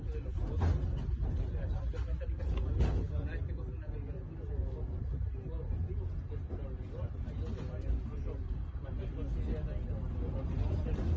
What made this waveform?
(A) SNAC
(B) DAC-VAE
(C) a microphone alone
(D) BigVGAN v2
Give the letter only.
C